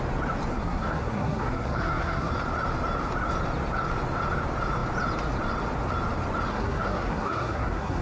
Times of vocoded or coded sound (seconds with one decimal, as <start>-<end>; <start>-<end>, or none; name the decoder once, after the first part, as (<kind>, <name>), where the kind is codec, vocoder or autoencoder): 0.5-2.3 (codec, SNAC); 6.5-8.0